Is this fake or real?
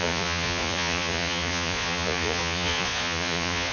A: fake